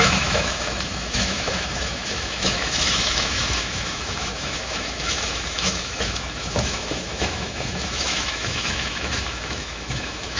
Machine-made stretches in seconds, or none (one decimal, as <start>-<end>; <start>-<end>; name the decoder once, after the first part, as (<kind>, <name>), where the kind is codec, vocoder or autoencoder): 0.0-10.4 (autoencoder, DAC-VAE)